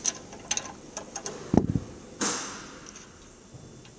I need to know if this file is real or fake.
real